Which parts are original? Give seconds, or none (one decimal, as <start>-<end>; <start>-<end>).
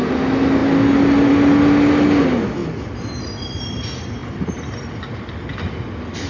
0.0-6.3